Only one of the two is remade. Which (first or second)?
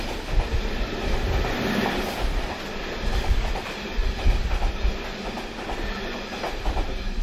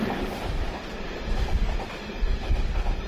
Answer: second